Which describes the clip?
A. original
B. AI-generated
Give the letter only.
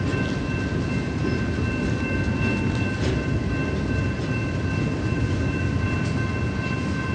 A